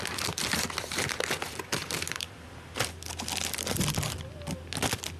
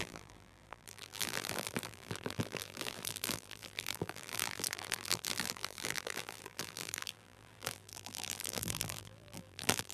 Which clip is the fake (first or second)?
second